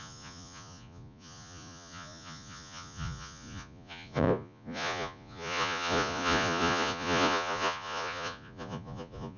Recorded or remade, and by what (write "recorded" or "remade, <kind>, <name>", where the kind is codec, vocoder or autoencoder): remade, vocoder, Vocos